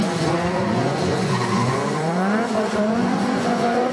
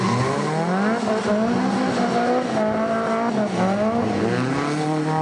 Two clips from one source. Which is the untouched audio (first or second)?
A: second